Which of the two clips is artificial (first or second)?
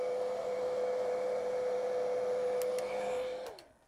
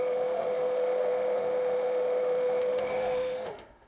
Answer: second